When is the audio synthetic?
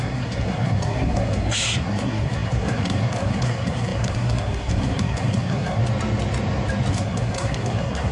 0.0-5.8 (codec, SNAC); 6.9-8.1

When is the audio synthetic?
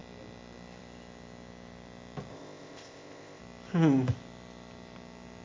2.3-3.4 (codec, ZipCodec)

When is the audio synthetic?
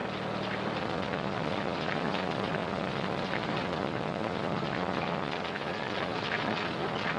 0.8-7.2 (vocoder, Vocos)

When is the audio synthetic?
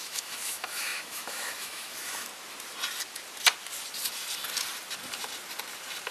0.0-2.3 (autoencoder, DAC-VAE)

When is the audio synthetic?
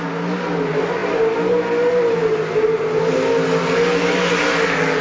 none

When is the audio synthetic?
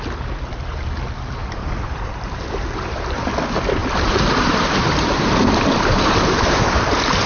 1.4-3.3 (vocoder, BigVGAN v2); 3.8-6.3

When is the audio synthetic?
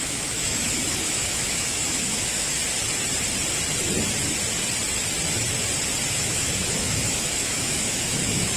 0.0-2.6 (autoencoder, DAC-VAE); 6.1-8.6